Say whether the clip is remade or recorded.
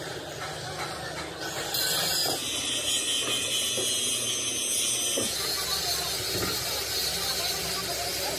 recorded